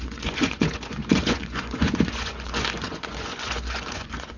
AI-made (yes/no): yes